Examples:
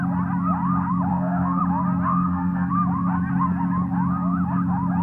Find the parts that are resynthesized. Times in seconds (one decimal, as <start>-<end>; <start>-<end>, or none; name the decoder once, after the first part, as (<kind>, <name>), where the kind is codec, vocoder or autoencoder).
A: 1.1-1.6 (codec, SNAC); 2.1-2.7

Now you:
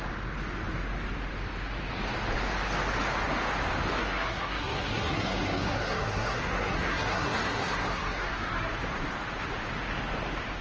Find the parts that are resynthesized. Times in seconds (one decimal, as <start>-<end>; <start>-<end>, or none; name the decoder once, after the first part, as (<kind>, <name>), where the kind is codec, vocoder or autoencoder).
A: 4.0-8.7 (codec, SNAC)

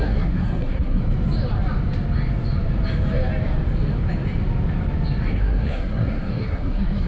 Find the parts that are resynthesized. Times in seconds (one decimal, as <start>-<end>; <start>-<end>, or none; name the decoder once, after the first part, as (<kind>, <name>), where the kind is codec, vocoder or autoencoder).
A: 0.0-1.0 (codec, SNAC); 5.3-7.1

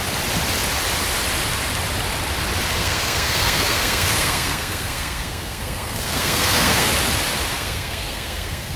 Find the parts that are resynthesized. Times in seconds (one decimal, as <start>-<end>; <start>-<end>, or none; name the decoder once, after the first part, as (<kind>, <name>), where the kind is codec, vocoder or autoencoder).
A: 2.8-6.9 (codec, SNAC); 7.5-8.8

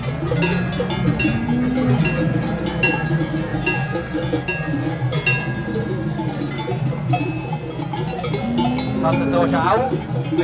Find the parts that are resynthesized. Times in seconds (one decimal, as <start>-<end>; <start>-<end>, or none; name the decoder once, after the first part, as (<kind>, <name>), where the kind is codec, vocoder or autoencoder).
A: none

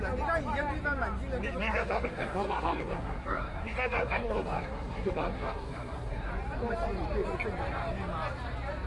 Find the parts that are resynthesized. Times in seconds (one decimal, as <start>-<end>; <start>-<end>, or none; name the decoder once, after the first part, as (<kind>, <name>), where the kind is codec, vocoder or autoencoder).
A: 1.6-6.3 (codec, SNAC)

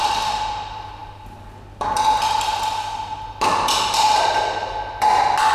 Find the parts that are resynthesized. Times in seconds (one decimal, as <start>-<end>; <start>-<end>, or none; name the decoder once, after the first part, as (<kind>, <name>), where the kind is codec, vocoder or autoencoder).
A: none